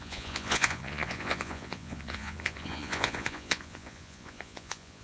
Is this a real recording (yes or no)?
no